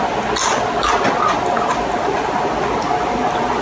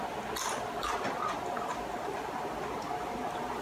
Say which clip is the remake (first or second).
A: second